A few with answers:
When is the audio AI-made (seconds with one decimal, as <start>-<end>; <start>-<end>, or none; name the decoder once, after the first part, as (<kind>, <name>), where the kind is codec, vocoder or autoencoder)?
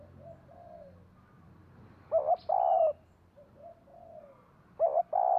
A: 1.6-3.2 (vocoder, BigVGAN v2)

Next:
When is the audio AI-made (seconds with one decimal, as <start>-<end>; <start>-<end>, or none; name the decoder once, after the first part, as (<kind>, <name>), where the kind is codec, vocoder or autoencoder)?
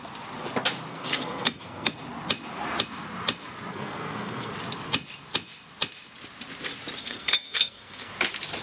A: 0.9-1.9 (codec, SNAC); 3.7-4.5; 7.0-8.1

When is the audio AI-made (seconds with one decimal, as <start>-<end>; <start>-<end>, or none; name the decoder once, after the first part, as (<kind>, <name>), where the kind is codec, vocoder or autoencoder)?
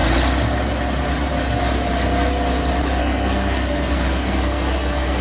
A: 3.0-5.2 (codec, SNAC)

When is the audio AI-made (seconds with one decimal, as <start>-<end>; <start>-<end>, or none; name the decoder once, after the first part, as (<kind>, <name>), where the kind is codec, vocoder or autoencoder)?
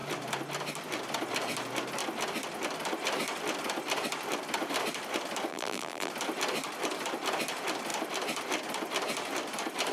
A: 5.5-6.1 (vocoder, BigVGAN v2)